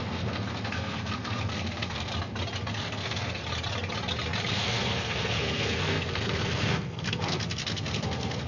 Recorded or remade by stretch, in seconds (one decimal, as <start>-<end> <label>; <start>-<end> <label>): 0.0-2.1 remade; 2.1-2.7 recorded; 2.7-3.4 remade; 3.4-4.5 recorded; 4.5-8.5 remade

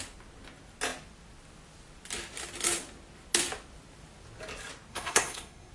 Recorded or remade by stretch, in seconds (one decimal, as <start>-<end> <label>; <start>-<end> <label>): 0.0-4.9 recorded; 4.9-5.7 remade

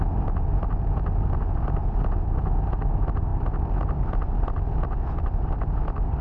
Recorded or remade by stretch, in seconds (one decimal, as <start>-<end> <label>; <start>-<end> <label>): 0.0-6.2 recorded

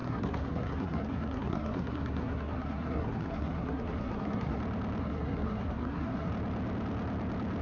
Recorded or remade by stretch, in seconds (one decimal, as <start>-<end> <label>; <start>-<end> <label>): 0.0-4.6 remade; 4.6-5.0 recorded; 5.0-6.3 remade; 6.3-7.6 recorded

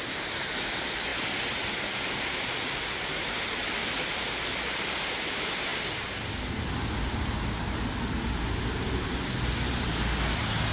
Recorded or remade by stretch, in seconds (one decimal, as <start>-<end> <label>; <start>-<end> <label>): 0.0-10.7 recorded